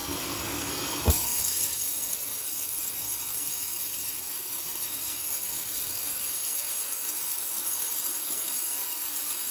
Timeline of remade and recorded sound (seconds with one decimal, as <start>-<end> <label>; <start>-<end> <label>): 0.0-9.5 remade